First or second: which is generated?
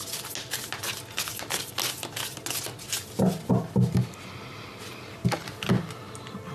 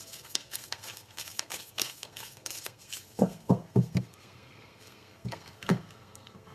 second